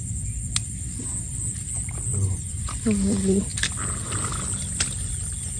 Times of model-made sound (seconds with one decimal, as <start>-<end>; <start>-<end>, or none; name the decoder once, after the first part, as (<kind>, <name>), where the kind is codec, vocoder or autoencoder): 2.1-2.7 (vocoder, Vocos)